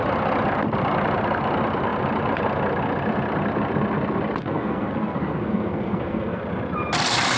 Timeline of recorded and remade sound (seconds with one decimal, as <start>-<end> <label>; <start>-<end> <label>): 0.0-4.4 recorded; 4.4-6.4 remade; 6.4-7.4 recorded